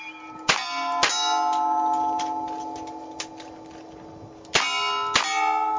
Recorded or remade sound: recorded